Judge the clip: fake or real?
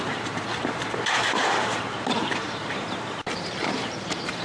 fake